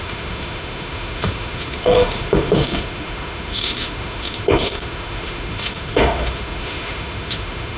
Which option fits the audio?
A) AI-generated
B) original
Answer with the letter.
A